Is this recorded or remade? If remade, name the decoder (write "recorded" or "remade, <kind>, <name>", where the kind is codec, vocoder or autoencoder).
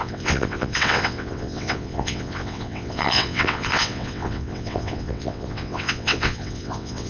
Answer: remade, vocoder, WaveNeXt